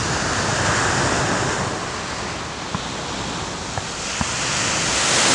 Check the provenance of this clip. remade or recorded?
recorded